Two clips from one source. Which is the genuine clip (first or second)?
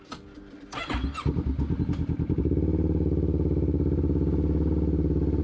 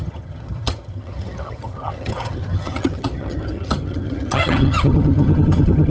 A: first